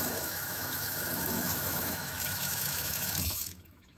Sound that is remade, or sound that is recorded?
remade